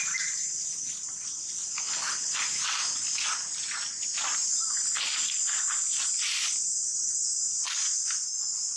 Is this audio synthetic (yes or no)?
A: no